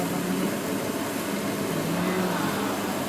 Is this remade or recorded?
recorded